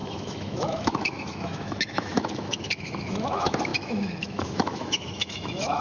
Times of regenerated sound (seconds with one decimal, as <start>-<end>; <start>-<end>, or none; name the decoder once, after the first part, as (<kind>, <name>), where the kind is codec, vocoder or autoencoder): 0.0-5.8 (autoencoder, DAC-VAE)